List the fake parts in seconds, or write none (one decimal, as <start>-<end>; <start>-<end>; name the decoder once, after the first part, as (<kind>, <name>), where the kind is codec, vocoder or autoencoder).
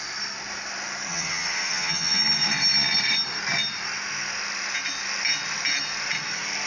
1.1-2.2 (vocoder, HiFi-GAN)